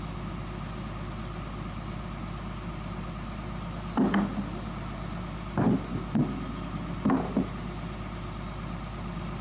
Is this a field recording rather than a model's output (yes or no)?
yes